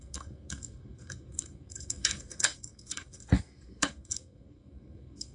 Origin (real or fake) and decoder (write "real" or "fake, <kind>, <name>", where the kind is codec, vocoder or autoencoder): fake, codec, SNAC